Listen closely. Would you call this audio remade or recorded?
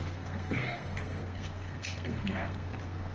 remade